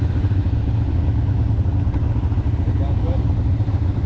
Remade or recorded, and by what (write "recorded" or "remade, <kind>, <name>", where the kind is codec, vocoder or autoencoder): recorded